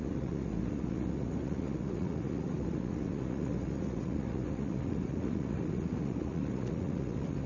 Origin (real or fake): fake